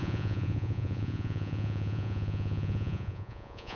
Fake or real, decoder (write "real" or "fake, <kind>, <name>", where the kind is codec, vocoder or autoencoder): fake, vocoder, Vocos